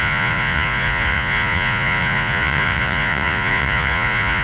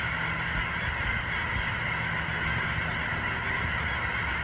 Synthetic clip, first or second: first